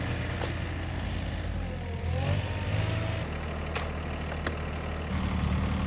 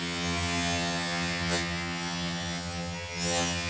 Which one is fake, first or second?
second